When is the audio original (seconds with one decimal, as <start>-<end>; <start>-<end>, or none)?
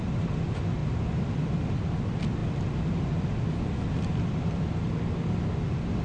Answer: 0.0-0.8; 1.5-6.0